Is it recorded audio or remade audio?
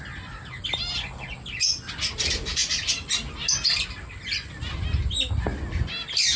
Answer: recorded